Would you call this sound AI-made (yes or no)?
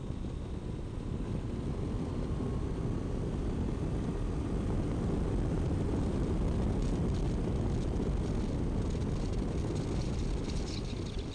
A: no